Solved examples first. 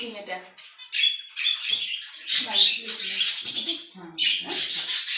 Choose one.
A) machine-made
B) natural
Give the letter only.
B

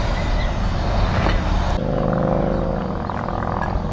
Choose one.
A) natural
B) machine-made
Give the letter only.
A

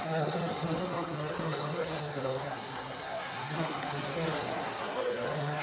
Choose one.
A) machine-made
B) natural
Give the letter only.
A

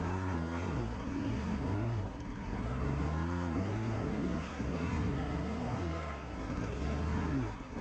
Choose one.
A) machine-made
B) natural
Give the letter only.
A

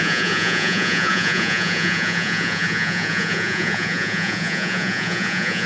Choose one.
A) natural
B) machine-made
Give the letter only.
B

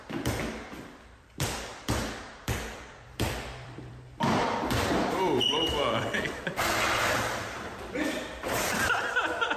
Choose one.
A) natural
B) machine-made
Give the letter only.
B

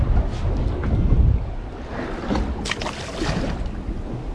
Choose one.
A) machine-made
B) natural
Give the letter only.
B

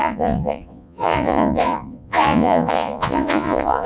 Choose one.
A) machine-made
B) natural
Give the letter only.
A